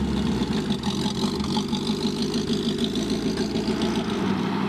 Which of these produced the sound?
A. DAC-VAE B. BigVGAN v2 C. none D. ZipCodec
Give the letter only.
C